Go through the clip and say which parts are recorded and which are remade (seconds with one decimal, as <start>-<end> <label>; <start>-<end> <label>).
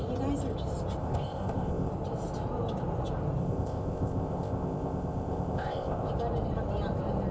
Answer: 0.0-1.0 recorded; 1.0-1.9 remade; 1.9-3.4 recorded; 3.4-6.1 remade; 6.1-7.3 recorded